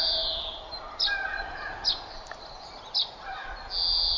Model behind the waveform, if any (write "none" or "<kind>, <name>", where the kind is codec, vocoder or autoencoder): none